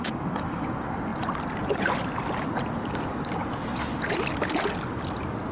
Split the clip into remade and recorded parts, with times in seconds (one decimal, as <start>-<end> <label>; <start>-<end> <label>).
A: 0.0-5.5 recorded